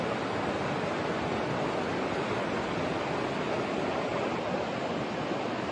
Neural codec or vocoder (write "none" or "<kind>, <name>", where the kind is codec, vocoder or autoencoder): none